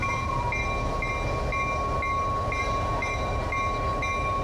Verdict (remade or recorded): recorded